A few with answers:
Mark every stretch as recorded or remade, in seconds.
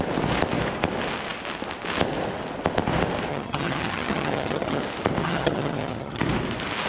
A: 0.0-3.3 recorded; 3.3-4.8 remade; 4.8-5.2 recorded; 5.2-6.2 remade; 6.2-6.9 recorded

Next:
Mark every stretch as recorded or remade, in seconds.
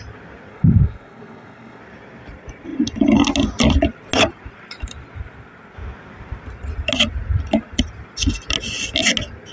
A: 0.0-0.5 recorded; 0.5-1.8 remade; 1.8-9.5 recorded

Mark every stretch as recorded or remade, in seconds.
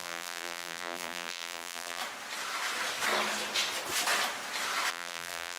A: 0.0-2.0 remade; 2.0-4.9 recorded; 4.9-5.6 remade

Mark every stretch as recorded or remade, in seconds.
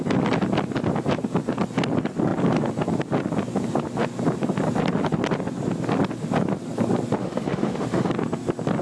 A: 0.0-7.2 recorded; 7.2-8.1 remade; 8.1-8.8 recorded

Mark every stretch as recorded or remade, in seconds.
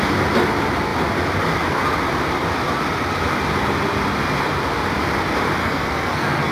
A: 0.0-5.6 recorded; 5.6-6.5 remade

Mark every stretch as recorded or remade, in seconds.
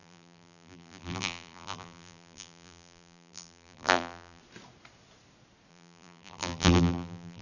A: 0.0-4.4 remade; 4.4-5.7 recorded; 5.7-7.4 remade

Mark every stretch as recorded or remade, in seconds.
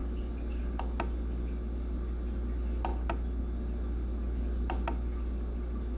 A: 0.0-6.0 recorded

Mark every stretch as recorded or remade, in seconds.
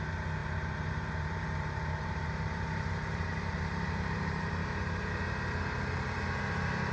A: 0.0-0.4 recorded; 0.4-4.5 remade; 4.5-6.9 recorded